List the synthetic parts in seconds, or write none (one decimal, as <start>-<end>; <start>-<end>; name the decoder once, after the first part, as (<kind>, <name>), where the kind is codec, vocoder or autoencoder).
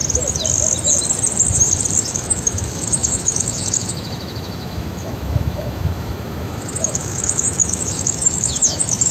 2.1-9.1 (autoencoder, DAC-VAE)